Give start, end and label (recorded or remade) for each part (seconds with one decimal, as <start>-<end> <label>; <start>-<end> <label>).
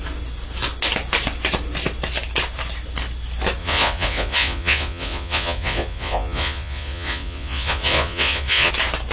0.0-3.6 recorded; 3.6-8.7 remade; 8.7-9.1 recorded